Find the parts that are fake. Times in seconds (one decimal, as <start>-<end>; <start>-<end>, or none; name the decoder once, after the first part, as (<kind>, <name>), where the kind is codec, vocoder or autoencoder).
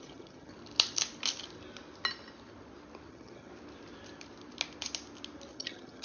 0.0-0.5 (vocoder, HiFi-GAN); 3.1-3.5; 5.5-6.0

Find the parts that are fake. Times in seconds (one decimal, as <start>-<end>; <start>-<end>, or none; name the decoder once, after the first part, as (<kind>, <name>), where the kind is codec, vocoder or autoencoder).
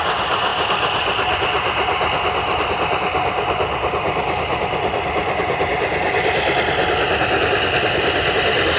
none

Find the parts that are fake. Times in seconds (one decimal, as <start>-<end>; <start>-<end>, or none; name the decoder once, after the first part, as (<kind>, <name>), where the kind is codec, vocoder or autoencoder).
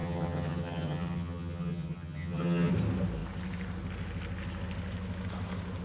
0.0-2.7 (vocoder, HiFi-GAN)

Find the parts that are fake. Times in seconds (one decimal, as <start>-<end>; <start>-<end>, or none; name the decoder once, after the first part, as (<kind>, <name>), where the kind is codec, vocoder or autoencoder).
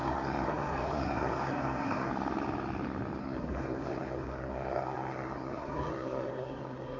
0.0-2.1 (codec, SNAC); 3.2-7.0